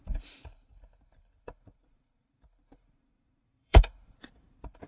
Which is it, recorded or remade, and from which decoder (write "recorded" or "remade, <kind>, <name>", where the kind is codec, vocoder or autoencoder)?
remade, vocoder, BigVGAN v2